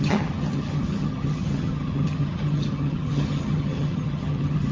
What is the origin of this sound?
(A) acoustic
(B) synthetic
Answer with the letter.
B